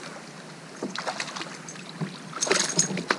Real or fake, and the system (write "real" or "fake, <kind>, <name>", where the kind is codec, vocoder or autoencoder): real